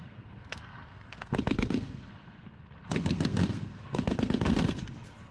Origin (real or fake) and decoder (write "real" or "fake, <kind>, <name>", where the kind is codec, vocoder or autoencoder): fake, codec, SNAC